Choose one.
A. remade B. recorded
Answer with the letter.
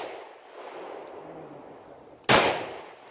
B